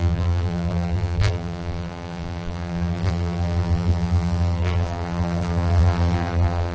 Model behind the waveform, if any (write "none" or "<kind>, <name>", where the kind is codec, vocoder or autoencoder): vocoder, BigVGAN v2